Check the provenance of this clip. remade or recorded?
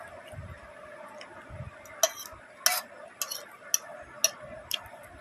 recorded